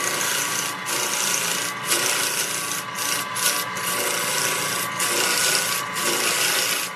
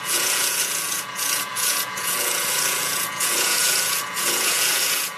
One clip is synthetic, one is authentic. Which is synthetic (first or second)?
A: second